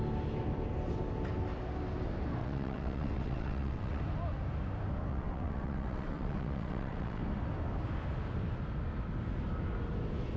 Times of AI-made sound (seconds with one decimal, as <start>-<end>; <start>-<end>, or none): 2.4-4.0; 5.1-7.2